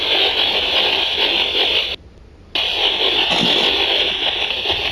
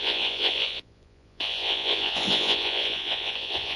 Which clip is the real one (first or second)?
first